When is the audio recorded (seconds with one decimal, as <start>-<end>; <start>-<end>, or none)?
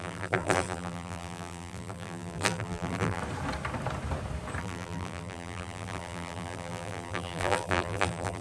3.2-4.6